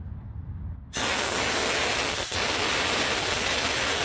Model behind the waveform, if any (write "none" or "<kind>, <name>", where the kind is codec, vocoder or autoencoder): none